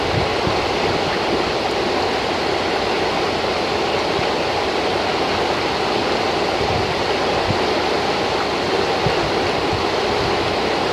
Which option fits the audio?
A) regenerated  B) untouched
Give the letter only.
B